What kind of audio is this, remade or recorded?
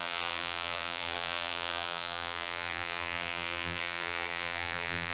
remade